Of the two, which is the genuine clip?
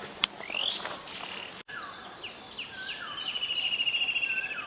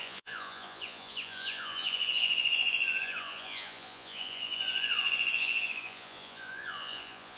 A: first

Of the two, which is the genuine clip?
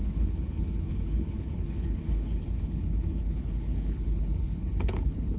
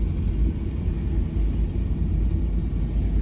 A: second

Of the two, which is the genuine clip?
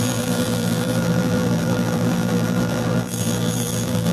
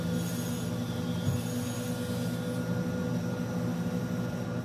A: second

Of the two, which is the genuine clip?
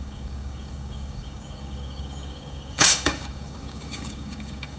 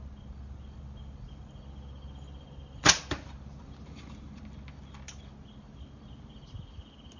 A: second